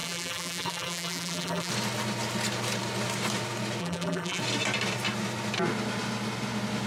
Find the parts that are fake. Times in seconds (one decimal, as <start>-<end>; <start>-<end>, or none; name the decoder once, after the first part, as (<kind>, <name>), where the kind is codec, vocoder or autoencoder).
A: 0.0-1.7 (vocoder, BigVGAN v2); 3.8-4.4